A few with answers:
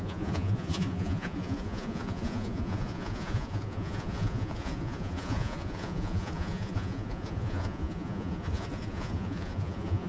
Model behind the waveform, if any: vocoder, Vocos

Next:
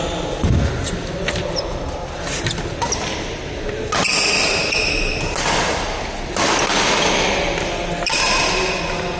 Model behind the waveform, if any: none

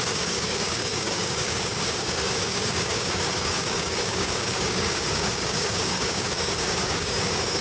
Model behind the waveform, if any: codec, DAC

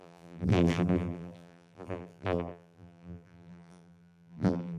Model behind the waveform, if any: vocoder, BigVGAN v2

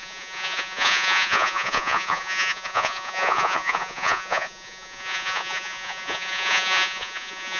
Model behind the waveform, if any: vocoder, Vocos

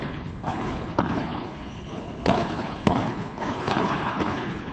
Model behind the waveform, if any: codec, HILCodec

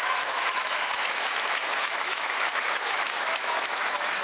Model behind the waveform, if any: autoencoder, DAC-VAE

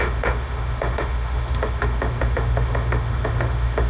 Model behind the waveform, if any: autoencoder, DAC-VAE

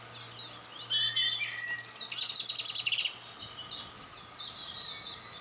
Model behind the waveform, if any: none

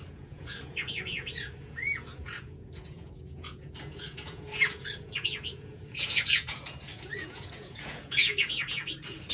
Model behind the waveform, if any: vocoder, Vocos